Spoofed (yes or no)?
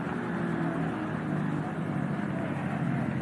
no